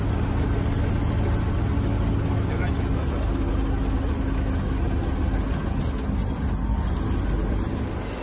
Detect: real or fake real